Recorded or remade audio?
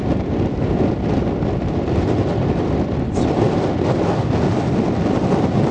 recorded